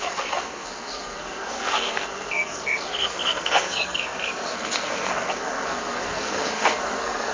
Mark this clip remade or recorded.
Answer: remade